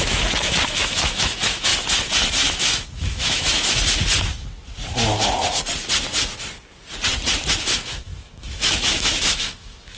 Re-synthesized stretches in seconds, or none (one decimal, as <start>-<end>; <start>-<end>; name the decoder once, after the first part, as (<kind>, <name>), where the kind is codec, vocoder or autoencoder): 0.0-1.7 (autoencoder, DAC-VAE); 2.3-3.8; 7.6-10.0